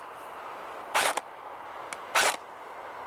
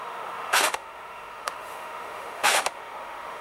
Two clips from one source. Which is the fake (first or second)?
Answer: second